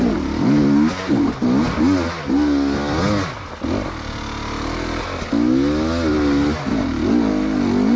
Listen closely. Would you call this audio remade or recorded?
recorded